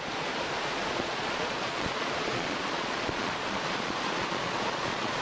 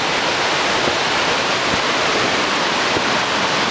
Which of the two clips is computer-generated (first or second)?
first